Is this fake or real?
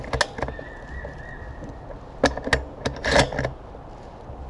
real